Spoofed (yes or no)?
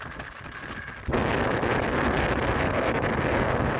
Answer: no